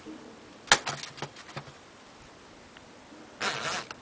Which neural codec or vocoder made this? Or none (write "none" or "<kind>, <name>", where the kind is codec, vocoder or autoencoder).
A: none